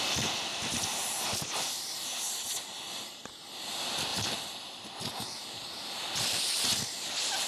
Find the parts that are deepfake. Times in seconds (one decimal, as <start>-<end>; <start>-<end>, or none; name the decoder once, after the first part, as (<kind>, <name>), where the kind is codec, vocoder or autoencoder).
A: 0.5-3.2 (vocoder, BigVGAN v2); 4.1-6.6